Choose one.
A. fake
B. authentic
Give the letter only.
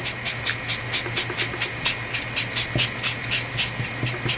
B